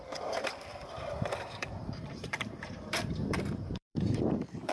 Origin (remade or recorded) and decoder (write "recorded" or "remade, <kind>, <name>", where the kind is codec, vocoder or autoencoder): remade, vocoder, BigVGAN v2